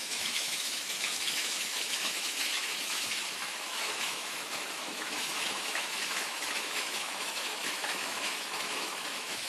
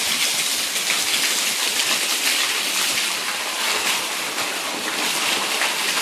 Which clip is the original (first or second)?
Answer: second